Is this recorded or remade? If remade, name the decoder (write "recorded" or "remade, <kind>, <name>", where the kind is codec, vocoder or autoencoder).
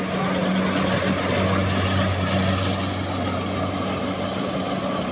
recorded